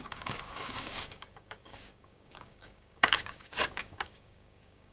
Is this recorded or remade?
remade